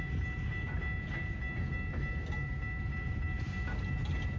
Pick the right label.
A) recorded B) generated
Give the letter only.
A